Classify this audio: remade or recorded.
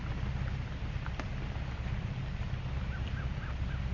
remade